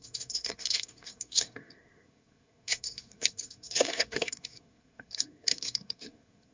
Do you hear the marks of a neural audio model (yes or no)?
yes